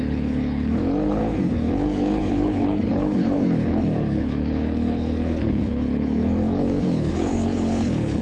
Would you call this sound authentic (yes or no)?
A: no